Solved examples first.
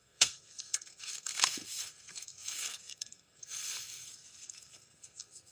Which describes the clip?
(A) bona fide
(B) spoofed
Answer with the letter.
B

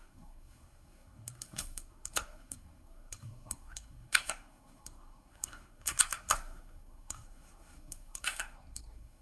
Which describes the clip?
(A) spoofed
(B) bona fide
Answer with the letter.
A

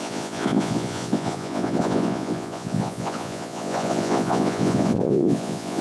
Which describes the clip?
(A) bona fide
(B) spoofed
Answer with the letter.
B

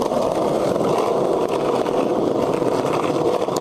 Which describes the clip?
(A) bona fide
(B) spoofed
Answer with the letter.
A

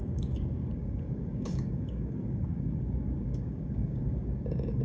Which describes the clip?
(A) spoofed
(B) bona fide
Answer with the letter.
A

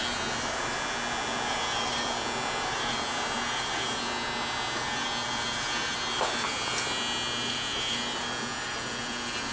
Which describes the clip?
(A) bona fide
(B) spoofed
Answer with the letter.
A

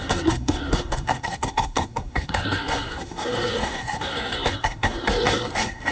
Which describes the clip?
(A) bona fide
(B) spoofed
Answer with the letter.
B